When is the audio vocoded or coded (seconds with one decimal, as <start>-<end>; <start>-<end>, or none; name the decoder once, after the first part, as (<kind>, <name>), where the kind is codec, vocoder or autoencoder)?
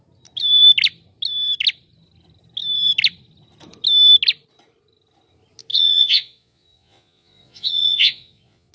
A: 5.7-8.7 (vocoder, Vocos)